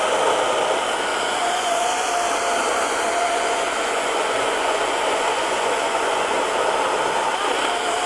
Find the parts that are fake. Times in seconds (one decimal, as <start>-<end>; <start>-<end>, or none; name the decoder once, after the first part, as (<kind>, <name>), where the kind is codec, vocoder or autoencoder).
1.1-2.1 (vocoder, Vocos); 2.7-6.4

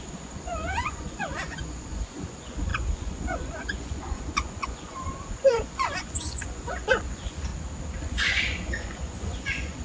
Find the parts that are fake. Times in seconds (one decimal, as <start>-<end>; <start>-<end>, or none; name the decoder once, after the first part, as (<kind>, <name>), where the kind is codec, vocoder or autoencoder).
0.0-7.5 (vocoder, Vocos); 8.0-9.8

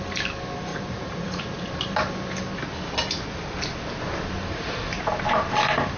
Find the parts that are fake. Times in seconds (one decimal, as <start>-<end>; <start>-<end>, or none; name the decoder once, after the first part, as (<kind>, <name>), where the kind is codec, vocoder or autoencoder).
0.7-1.7 (vocoder, Vocos); 4.5-5.1

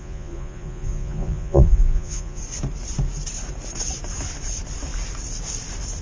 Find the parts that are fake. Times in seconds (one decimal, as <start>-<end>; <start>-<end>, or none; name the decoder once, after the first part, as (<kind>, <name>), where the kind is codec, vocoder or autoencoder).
0.0-2.4 (vocoder, Vocos)

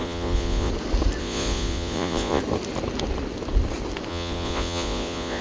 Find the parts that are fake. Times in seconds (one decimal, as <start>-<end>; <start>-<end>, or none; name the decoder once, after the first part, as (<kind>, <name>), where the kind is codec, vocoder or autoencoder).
0.0-0.7 (vocoder, Vocos); 1.2-2.4; 4.1-5.4